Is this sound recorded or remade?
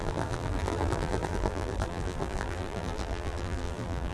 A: remade